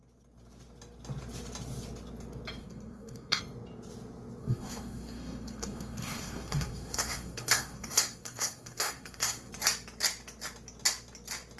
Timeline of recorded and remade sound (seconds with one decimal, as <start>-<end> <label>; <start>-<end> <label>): 0.0-2.6 recorded; 2.6-3.4 remade; 3.4-4.4 recorded; 4.4-9.5 remade; 9.5-11.6 recorded